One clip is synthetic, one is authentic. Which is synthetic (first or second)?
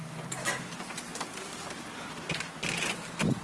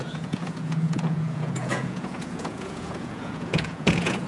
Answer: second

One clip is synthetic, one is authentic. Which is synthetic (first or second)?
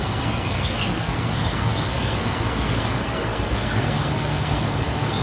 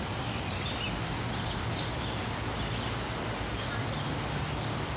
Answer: first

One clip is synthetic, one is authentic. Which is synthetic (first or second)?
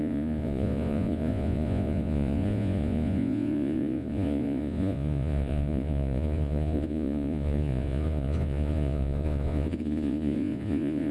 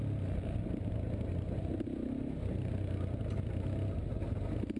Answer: first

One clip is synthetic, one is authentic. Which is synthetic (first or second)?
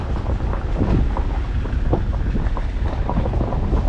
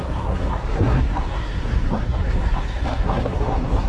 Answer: second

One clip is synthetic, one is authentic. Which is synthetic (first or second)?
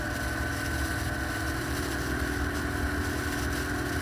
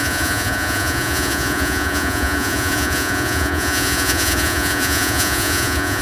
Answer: second